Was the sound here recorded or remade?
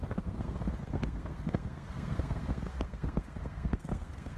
remade